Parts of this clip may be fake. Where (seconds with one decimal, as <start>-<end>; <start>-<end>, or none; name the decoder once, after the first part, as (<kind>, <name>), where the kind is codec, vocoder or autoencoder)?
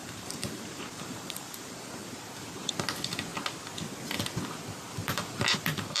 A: 0.0-2.7 (vocoder, BigVGAN v2); 5.0-6.0